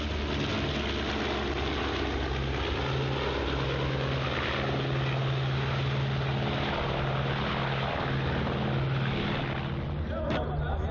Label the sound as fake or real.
real